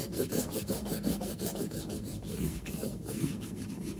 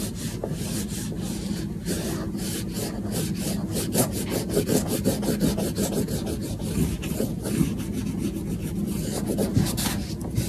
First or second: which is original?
second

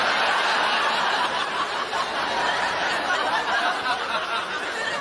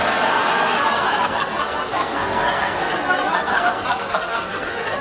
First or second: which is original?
first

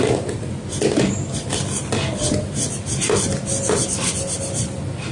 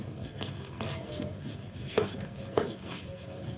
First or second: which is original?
first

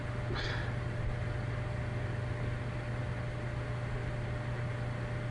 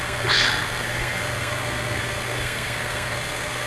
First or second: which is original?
first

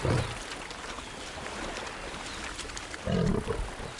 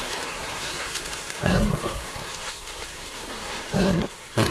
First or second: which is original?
first